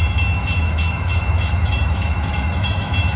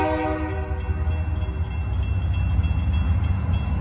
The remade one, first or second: first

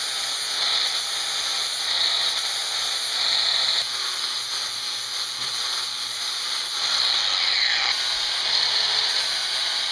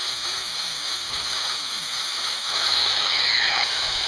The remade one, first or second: second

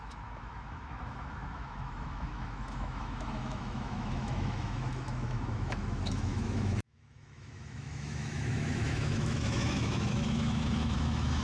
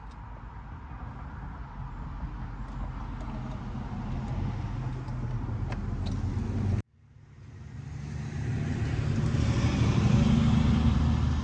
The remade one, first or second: first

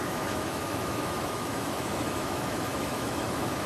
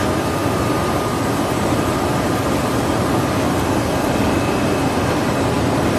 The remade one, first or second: first